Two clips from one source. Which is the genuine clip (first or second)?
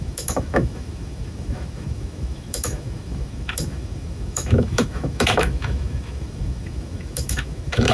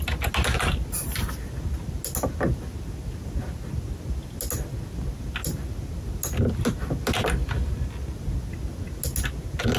second